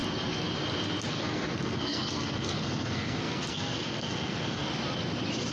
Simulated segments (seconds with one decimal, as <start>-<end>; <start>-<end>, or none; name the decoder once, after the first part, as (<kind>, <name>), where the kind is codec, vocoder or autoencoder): 1.1-4.6 (codec, SNAC)